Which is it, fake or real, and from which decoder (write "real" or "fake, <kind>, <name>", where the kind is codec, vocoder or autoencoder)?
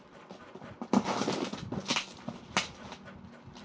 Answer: real